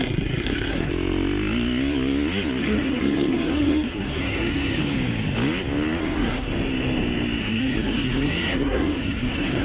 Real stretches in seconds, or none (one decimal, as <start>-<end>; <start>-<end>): 0.9-2.6; 4.8-6.0; 6.5-7.4

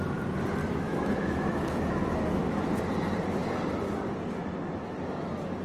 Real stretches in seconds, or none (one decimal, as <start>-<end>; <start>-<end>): 0.0-0.6; 2.8-5.6

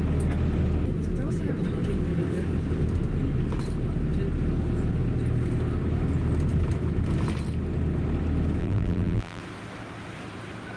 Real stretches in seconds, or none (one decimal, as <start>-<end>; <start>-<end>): 0.0-8.6; 9.4-10.8

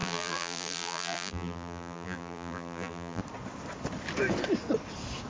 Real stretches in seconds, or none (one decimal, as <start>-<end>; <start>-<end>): 3.2-5.3

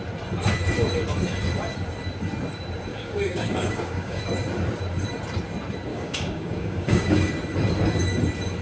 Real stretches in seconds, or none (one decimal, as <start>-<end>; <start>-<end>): 0.0-2.9; 4.2-5.9; 7.3-8.6

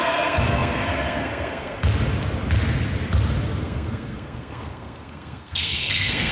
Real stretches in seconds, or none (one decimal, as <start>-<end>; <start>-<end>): 1.8-3.6

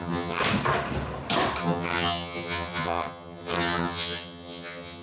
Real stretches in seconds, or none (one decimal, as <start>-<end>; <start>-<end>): 0.4-1.6